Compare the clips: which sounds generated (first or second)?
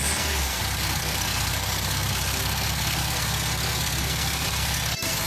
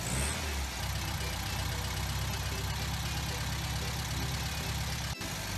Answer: first